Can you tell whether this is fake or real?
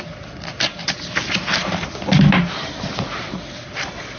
real